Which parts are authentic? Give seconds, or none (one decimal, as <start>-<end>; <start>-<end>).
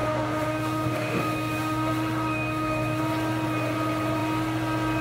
3.0-5.0